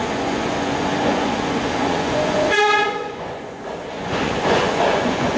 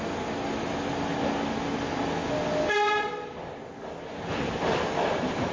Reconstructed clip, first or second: first